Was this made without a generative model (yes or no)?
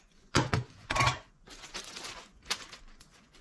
no